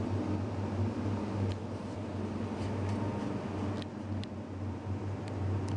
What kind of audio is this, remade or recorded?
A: recorded